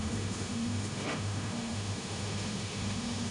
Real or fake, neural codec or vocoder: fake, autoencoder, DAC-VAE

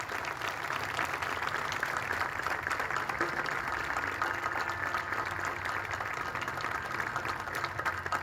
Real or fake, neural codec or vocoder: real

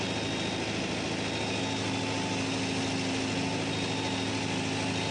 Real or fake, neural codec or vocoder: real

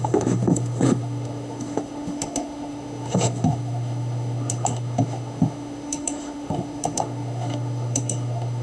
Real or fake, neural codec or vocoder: fake, autoencoder, DAC-VAE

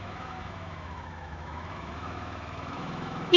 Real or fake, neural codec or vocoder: fake, autoencoder, DAC-VAE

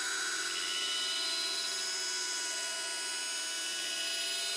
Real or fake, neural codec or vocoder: real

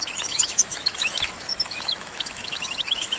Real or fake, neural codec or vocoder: fake, autoencoder, DAC-VAE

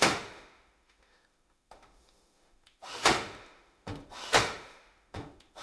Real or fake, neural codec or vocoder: fake, autoencoder, DAC-VAE